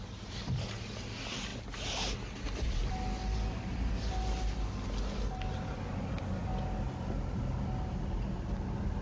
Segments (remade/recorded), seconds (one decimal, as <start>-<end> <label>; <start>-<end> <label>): 0.0-9.0 recorded